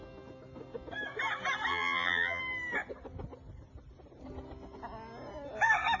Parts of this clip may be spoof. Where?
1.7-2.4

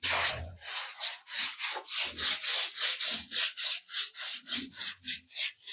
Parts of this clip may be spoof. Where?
0.0-1.6; 2.5-3.0; 3.9-4.7

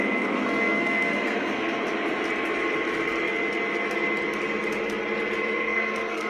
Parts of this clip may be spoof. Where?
0.0-1.8; 5.6-6.3

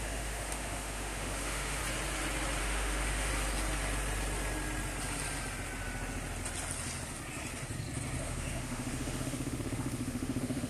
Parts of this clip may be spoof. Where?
0.0-1.8; 2.6-3.3; 8.2-10.7

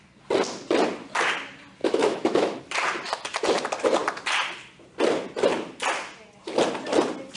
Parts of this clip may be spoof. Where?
1.8-2.6